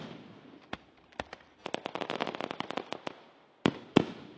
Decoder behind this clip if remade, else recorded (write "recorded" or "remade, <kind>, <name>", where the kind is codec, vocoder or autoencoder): recorded